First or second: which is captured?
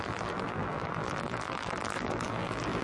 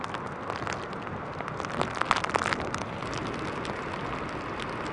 second